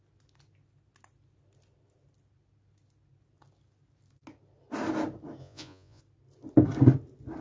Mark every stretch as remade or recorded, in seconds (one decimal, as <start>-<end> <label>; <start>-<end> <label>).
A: 0.0-5.4 recorded; 5.4-6.0 remade; 6.0-7.4 recorded